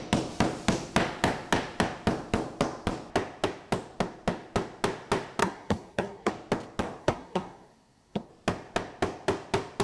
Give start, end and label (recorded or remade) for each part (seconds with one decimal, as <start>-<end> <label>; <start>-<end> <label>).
0.0-5.4 recorded; 5.4-6.3 remade; 6.3-7.0 recorded; 7.0-8.3 remade; 8.3-9.8 recorded